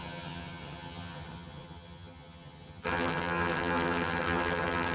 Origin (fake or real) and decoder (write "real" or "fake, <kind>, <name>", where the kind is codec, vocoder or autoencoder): fake, vocoder, HiFi-GAN